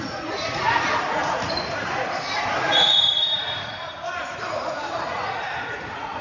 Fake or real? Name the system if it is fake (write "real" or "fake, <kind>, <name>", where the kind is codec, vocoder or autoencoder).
fake, vocoder, Vocos